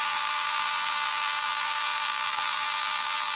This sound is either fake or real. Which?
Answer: fake